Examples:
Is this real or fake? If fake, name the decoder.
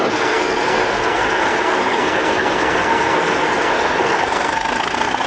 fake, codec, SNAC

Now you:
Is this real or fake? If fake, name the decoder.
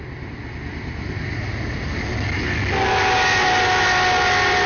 real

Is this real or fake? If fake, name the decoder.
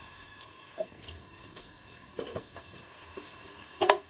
fake, codec, SNAC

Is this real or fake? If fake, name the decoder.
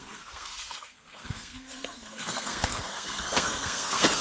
fake, codec, SNAC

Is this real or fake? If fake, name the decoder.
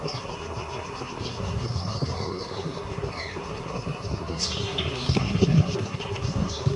fake, codec, SNAC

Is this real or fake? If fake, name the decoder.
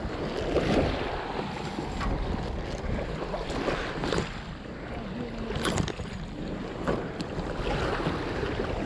real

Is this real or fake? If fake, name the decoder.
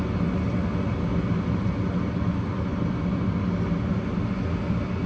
real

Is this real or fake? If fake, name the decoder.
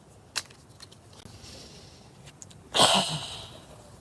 real